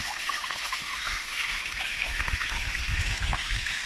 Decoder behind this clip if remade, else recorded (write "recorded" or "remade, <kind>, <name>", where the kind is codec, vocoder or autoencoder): remade, autoencoder, DAC-VAE